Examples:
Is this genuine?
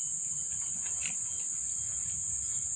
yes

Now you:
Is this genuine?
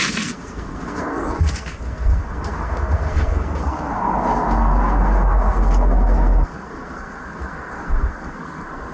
no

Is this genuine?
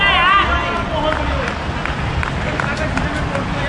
yes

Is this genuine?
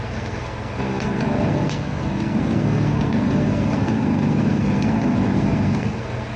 no